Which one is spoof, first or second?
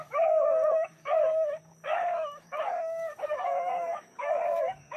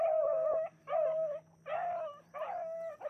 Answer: first